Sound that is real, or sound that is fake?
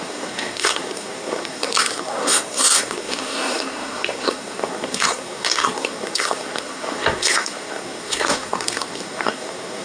fake